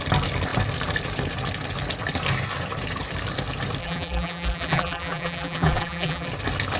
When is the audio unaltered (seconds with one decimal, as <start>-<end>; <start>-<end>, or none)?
0.0-3.8; 6.3-6.8